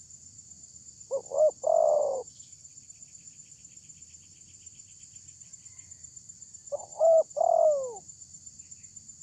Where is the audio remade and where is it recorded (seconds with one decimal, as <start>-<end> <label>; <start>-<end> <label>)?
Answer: 0.0-9.2 recorded